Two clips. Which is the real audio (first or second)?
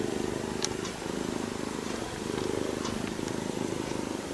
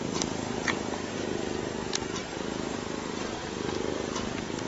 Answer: first